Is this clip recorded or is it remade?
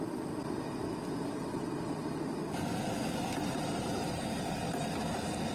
recorded